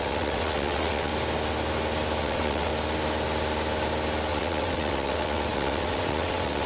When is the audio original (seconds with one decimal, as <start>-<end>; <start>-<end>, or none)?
1.1-2.2; 2.7-4.3